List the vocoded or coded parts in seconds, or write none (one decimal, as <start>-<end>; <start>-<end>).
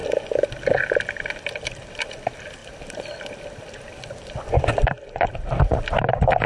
none